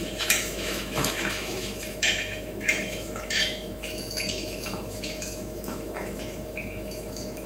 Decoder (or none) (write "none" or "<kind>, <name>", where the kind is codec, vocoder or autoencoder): autoencoder, DAC-VAE